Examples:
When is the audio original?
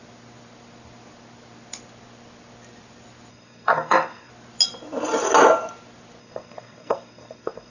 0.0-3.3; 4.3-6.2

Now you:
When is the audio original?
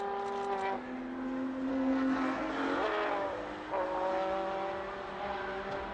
0.0-1.7; 2.5-5.9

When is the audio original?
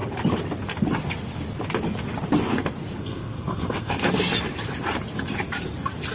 0.0-3.0; 3.9-6.1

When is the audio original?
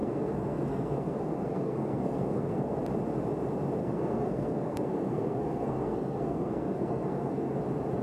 2.8-3.8; 7.6-8.0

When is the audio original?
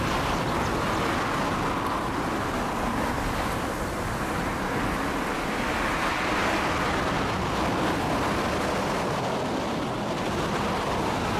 0.0-11.4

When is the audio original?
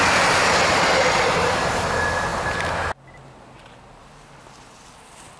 0.0-5.4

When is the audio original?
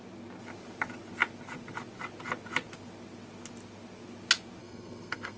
0.0-4.6